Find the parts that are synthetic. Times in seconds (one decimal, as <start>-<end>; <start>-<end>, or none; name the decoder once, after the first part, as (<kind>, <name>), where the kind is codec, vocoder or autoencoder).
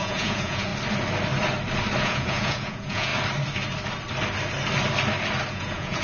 0.0-0.7 (vocoder, Vocos); 2.0-3.1; 5.5-6.0